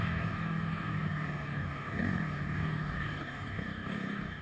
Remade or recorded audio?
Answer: remade